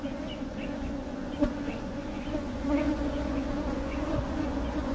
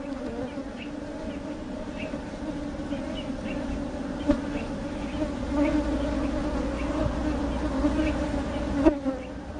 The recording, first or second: second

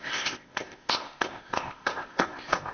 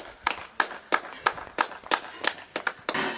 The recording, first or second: second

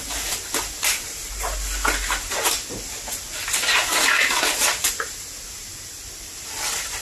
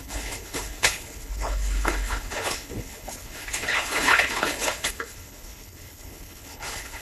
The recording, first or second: first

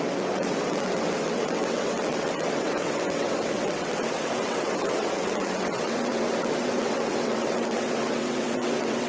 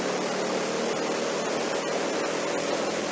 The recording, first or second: second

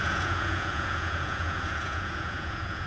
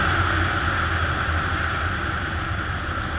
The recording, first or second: second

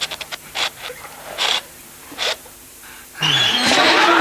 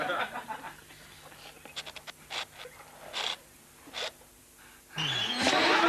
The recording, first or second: second